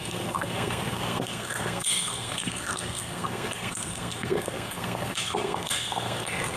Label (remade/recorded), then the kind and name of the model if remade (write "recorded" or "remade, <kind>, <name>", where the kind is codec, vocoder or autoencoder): remade, codec, SNAC